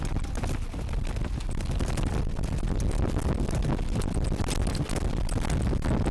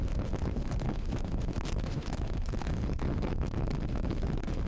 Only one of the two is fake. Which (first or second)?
second